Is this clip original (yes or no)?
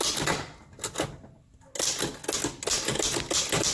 yes